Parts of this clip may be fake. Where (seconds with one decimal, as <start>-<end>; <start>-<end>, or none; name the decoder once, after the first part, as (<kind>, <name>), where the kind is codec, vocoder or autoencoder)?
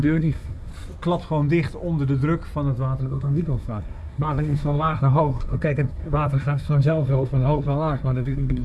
0.0-0.7 (codec, SNAC); 3.0-8.6